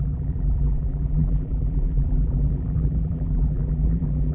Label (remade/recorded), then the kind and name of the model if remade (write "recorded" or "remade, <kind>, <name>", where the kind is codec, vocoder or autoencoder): remade, vocoder, BigVGAN v2